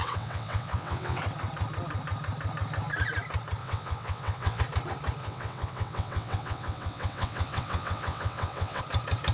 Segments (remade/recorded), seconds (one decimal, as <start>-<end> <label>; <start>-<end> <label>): 0.0-1.2 remade; 1.2-3.6 recorded; 3.6-4.6 remade; 4.6-5.2 recorded; 5.2-8.8 remade; 8.8-9.3 recorded